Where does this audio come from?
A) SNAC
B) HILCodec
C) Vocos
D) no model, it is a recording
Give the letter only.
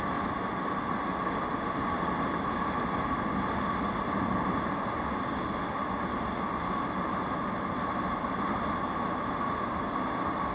D